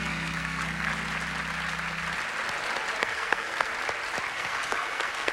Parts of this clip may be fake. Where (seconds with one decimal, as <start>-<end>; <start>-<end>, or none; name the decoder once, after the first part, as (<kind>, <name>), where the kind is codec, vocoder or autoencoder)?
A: 0.0-0.9 (codec, SNAC); 3.0-3.7; 4.3-5.3